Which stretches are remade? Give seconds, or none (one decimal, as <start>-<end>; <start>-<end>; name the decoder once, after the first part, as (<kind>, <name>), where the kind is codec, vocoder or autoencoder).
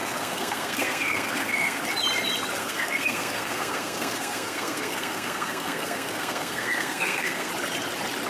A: 0.0-1.8 (codec, SNAC); 2.6-7.5